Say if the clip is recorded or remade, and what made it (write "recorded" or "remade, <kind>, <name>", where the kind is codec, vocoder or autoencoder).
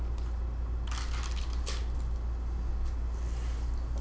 recorded